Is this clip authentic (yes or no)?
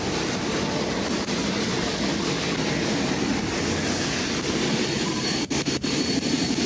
yes